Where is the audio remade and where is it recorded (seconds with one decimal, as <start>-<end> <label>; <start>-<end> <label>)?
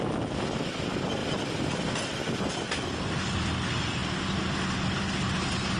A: 0.0-5.8 recorded